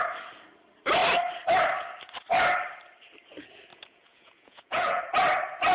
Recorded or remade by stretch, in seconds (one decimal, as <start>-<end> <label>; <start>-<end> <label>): 0.0-3.7 recorded; 3.7-5.0 remade; 5.0-5.7 recorded

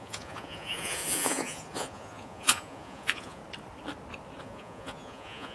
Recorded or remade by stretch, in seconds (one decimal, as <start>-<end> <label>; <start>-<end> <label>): 0.0-3.4 remade; 3.4-4.4 recorded; 4.4-5.5 remade

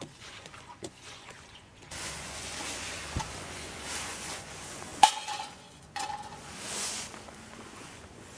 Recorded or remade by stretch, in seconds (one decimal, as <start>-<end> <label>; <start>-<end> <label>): 0.0-8.4 remade